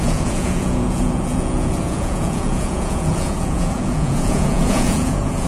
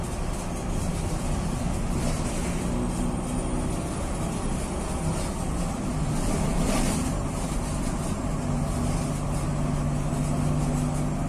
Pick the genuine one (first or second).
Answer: second